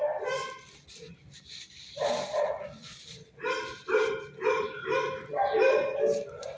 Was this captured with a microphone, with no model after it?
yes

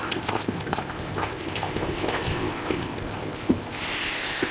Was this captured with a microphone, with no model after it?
no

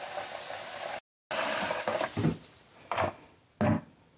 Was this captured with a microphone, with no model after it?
yes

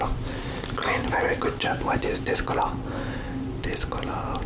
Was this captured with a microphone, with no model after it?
yes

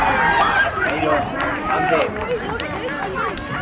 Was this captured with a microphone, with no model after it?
yes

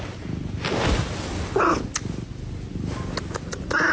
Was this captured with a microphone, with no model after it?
yes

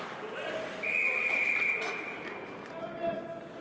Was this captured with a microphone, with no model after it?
yes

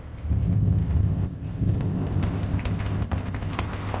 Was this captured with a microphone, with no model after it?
no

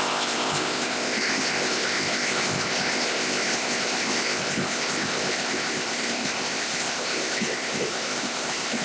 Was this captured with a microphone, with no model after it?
no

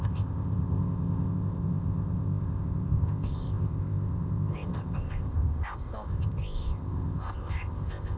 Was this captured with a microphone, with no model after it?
no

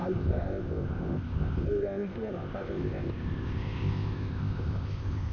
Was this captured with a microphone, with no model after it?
no